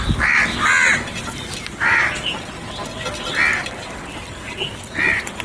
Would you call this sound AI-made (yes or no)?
no